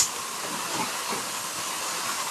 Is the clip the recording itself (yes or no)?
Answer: yes